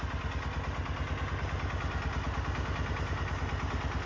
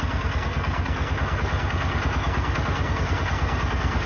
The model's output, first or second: second